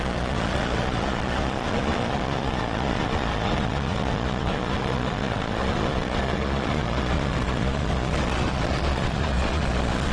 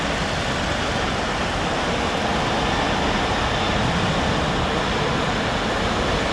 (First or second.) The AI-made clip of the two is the first